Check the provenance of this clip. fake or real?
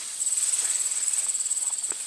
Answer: fake